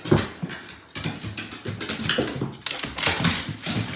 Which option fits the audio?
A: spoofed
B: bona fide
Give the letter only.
B